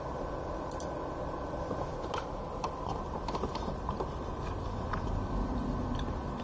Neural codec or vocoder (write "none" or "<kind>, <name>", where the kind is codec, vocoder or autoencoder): vocoder, BigVGAN v2